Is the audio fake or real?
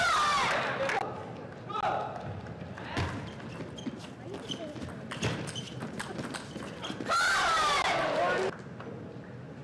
real